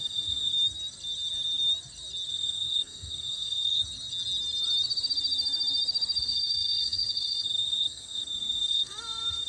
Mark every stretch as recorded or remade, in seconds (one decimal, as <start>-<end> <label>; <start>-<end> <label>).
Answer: 0.0-0.5 remade; 0.5-2.3 recorded; 2.3-3.8 remade; 3.8-6.2 recorded; 6.2-9.5 remade